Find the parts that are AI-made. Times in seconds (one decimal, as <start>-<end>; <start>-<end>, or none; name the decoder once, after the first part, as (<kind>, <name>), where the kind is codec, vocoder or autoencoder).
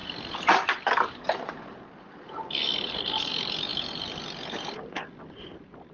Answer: none